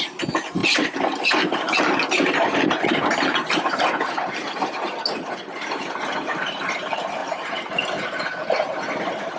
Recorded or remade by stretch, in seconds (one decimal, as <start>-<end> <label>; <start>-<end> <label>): 0.0-9.4 recorded